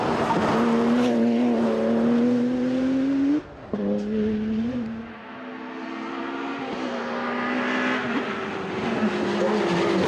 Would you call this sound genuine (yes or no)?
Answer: yes